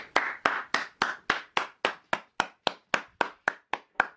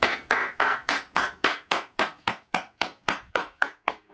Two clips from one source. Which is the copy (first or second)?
second